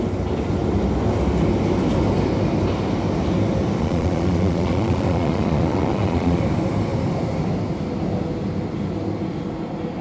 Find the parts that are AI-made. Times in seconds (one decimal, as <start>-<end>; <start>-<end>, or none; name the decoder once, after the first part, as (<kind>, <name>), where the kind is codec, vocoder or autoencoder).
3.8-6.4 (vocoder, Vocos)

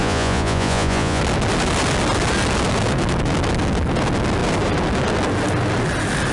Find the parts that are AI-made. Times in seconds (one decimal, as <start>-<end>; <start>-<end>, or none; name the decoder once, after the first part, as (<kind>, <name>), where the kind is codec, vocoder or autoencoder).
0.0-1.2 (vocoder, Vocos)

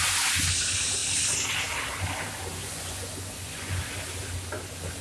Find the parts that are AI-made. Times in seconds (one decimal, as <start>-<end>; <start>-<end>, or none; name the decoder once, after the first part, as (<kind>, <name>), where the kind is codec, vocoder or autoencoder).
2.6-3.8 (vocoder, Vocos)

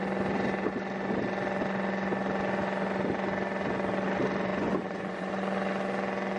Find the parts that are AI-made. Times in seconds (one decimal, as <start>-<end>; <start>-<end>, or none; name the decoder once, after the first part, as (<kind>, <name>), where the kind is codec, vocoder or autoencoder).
4.5-5.3 (vocoder, Vocos)

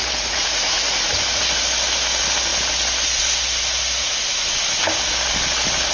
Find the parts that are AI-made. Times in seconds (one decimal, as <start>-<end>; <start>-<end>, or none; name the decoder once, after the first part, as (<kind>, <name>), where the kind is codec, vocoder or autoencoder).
0.0-1.1 (vocoder, Vocos)